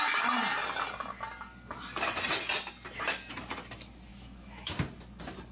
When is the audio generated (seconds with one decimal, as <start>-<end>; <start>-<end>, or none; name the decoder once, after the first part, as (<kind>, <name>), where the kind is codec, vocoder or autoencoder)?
4.1-4.7 (autoencoder, DAC-VAE)